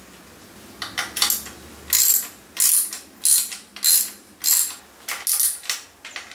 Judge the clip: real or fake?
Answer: real